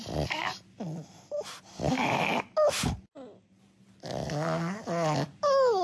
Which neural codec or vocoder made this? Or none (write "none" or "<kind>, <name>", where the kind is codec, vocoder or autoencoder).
none